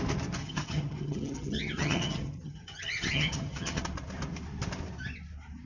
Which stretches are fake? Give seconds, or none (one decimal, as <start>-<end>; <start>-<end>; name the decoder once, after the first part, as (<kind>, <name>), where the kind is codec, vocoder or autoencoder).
0.4-3.8 (vocoder, HiFi-GAN)